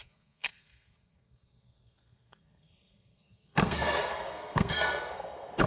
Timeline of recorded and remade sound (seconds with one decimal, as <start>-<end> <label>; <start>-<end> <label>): 0.0-5.7 remade